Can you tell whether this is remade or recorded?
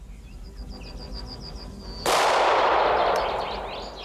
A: recorded